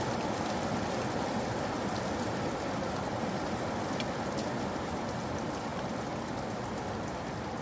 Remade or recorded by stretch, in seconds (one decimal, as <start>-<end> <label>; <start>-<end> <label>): 0.0-7.6 recorded